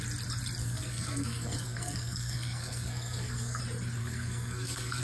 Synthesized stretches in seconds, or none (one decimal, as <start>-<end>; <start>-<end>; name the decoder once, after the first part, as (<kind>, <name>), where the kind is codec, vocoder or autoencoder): 0.6-3.6 (codec, SNAC); 4.0-5.0